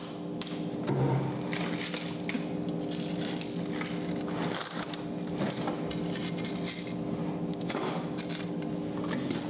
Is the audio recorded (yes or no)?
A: yes